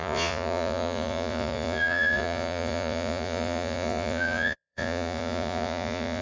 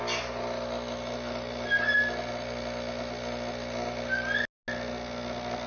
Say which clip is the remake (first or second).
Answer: first